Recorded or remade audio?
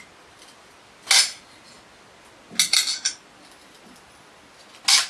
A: recorded